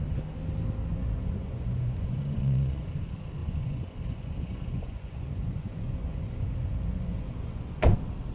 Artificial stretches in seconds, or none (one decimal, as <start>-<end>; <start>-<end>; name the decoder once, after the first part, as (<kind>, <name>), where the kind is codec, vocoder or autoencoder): 0.9-3.0 (vocoder, Vocos); 3.4-7.6